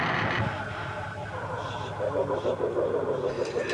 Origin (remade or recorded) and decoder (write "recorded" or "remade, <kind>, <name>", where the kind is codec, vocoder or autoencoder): recorded